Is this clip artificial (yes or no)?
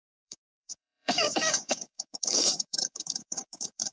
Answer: yes